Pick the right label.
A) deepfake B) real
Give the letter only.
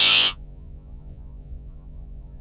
A